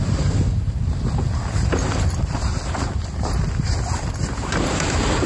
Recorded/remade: recorded